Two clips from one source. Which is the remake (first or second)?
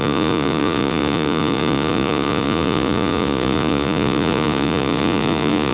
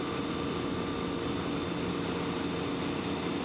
first